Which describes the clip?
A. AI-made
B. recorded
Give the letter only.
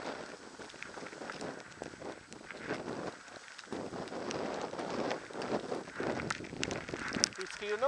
B